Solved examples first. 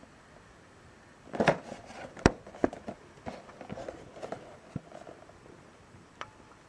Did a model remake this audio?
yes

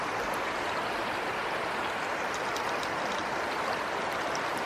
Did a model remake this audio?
no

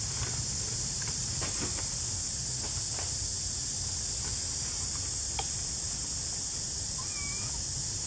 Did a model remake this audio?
no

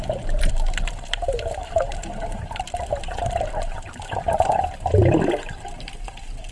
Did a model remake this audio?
yes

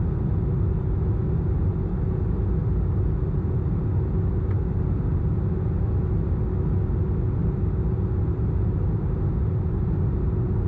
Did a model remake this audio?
no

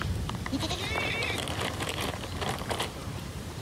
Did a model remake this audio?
yes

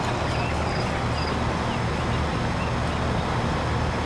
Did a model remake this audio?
no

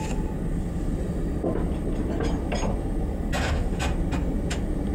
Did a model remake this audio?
no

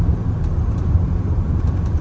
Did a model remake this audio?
yes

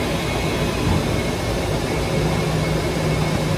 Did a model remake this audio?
no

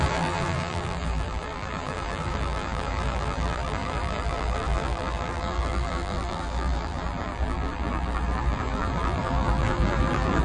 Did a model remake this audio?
yes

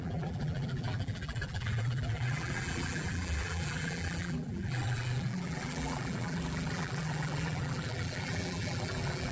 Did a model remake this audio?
yes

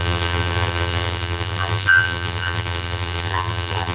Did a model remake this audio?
yes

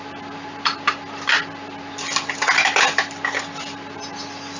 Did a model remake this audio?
no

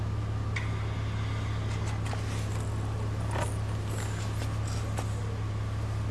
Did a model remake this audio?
no